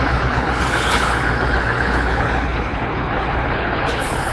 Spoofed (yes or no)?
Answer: yes